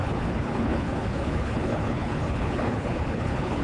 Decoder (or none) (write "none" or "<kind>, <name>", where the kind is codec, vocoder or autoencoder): codec, HILCodec